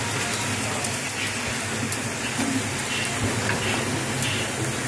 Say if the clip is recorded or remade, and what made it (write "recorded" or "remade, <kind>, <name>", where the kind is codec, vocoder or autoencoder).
recorded